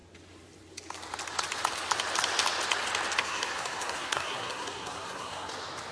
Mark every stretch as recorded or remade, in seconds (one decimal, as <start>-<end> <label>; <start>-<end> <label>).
0.0-3.2 recorded; 3.2-5.5 remade; 5.5-5.9 recorded